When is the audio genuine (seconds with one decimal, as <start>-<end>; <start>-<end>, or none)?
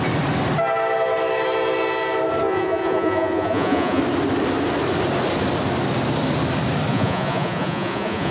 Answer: 0.0-2.5; 4.0-6.9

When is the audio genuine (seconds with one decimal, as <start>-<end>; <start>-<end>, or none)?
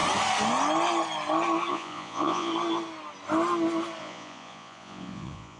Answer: 0.0-1.7; 2.5-4.0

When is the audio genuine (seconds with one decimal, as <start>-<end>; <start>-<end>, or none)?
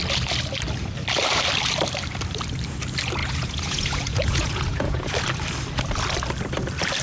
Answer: 0.0-3.2; 5.1-7.0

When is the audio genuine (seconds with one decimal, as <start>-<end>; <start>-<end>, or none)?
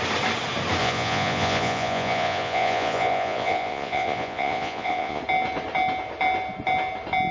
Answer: 0.0-0.8; 5.2-7.3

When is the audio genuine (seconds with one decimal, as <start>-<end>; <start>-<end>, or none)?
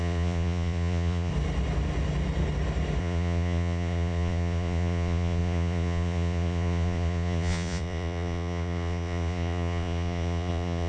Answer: 1.3-3.0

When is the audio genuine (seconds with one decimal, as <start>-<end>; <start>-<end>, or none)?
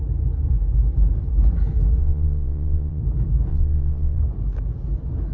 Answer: 0.0-2.0; 3.0-3.5; 4.2-5.3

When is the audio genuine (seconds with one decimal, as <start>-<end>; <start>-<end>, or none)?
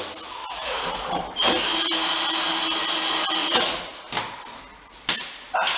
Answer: 0.0-0.4; 1.2-3.4; 4.1-5.8